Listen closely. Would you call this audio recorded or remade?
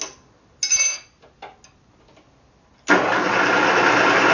recorded